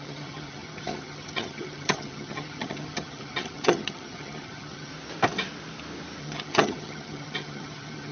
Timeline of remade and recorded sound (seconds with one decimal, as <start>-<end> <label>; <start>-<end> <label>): 0.0-4.9 remade; 4.9-6.2 recorded; 6.2-8.1 remade